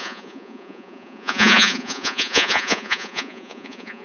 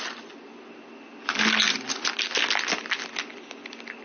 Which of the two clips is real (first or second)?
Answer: second